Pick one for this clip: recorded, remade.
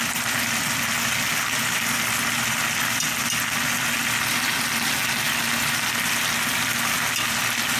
recorded